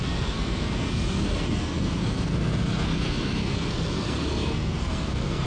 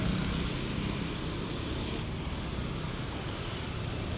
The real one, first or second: second